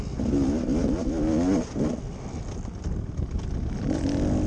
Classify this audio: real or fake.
real